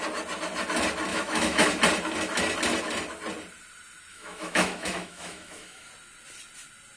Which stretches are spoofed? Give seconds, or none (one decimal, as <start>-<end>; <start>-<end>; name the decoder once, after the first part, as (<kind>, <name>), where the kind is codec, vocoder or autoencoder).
1.1-1.7 (autoencoder, DAC-VAE); 4.1-5.9